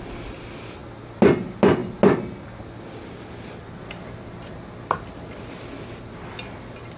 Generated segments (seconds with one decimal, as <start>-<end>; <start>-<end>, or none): none

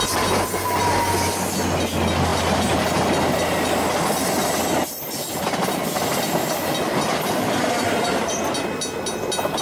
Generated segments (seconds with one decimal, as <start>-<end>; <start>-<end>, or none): none

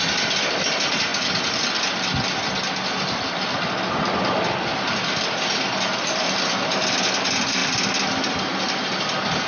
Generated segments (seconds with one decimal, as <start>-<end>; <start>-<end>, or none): none

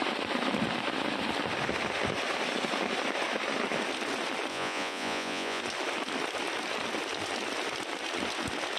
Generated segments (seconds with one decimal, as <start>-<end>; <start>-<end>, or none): 4.5-5.6

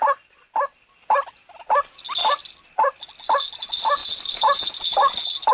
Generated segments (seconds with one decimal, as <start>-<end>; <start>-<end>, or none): none

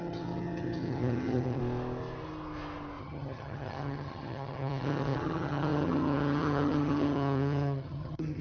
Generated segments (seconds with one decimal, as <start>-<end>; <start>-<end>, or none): 0.0-1.6; 3.0-8.4